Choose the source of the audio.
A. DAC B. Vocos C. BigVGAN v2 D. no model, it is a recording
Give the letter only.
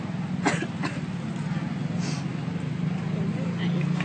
D